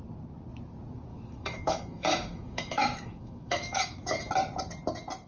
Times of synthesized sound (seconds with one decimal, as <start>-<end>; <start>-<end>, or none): 1.1-4.3